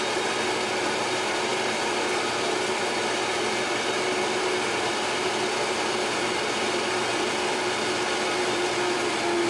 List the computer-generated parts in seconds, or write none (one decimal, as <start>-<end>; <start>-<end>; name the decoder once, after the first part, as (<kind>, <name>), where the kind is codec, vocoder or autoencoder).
none